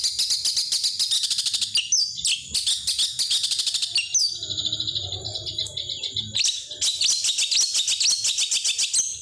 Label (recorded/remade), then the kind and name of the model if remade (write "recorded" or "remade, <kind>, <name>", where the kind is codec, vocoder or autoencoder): recorded